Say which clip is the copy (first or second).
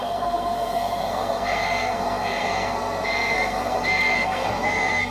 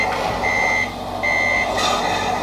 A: first